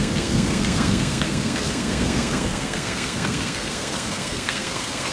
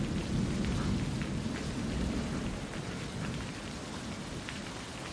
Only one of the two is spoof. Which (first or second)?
first